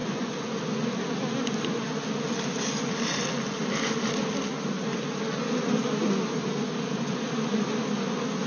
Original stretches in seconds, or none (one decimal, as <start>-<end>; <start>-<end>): 0.6-8.5